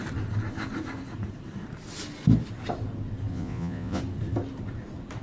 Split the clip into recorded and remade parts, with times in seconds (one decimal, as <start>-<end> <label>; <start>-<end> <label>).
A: 0.0-3.3 recorded; 3.3-4.0 remade; 4.0-5.2 recorded